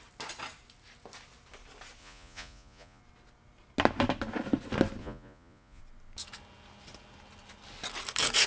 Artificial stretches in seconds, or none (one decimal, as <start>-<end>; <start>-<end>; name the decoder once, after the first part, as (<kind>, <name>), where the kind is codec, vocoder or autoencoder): 2.0-3.0 (vocoder, Vocos); 5.0-5.8